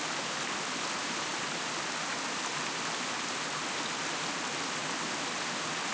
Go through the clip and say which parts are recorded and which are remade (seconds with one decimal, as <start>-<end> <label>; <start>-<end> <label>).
0.0-5.9 recorded